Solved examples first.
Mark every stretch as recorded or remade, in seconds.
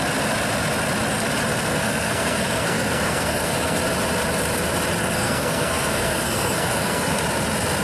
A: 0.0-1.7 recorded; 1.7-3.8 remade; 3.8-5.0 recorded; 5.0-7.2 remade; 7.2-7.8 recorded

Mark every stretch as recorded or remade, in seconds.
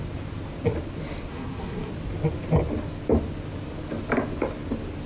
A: 0.0-1.3 recorded; 1.3-1.9 remade; 1.9-5.1 recorded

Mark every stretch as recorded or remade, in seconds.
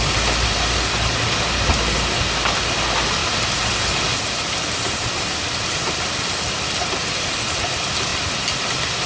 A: 0.0-9.1 recorded